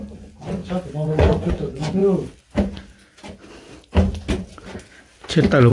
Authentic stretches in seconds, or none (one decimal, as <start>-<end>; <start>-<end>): 2.0-5.7